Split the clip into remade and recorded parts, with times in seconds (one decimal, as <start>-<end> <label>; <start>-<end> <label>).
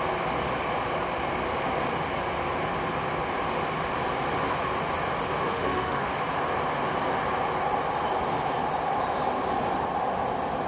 0.0-5.5 recorded; 5.5-6.2 remade; 6.2-10.7 recorded